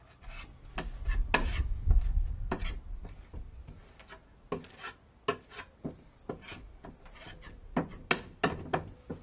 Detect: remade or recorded recorded